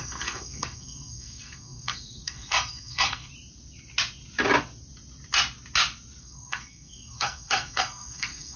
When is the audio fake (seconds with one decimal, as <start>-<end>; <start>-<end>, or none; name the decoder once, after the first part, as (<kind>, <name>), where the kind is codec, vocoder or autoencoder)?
0.0-3.3 (codec, SNAC); 6.2-8.6